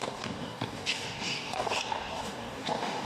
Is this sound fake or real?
fake